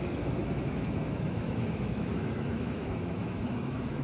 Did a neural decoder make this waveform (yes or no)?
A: yes